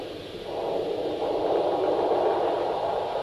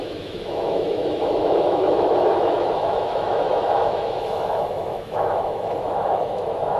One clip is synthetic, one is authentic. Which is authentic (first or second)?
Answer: first